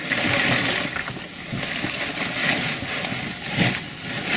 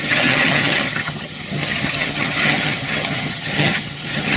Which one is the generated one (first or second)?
second